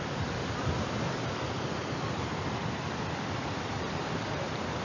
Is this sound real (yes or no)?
no